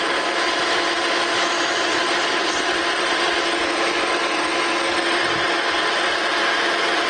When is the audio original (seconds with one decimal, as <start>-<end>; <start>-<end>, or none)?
0.0-1.3; 2.1-7.1